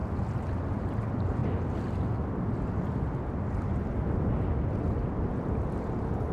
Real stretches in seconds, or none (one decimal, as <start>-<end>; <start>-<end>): 0.0-6.3